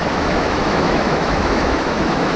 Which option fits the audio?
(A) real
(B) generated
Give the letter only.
B